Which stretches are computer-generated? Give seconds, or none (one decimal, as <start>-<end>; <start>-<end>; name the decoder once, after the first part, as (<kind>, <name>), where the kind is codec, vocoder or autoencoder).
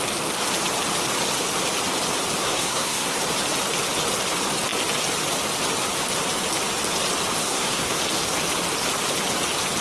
2.4-3.2 (codec, SNAC); 7.4-8.0